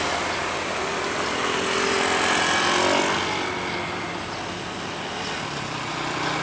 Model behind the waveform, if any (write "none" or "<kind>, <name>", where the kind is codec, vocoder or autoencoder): none